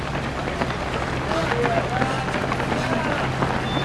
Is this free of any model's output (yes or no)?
yes